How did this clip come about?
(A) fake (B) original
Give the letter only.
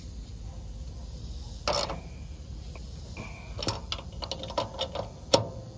B